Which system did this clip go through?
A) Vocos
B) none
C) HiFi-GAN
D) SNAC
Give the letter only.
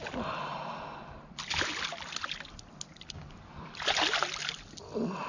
B